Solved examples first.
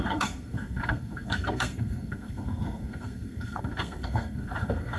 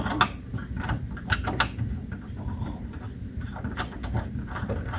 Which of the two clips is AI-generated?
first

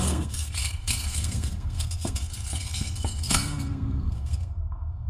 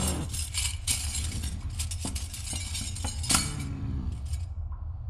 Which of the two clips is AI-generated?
first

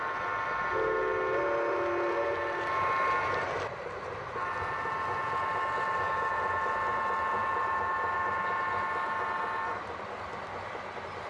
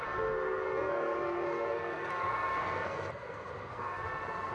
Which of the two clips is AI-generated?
second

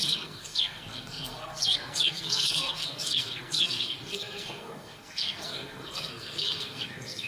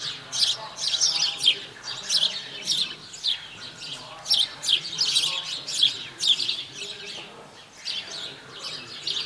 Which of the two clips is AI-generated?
first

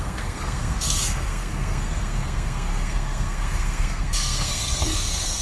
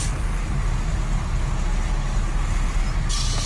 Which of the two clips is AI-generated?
first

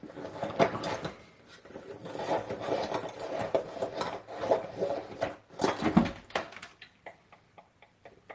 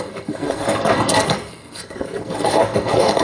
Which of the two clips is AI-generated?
second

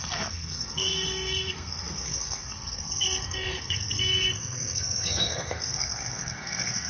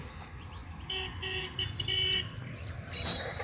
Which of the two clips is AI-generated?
first